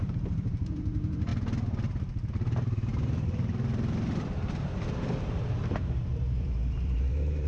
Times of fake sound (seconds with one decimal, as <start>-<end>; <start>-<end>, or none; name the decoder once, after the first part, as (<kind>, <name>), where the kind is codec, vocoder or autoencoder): 0.0-1.3 (vocoder, BigVGAN v2); 2.3-7.5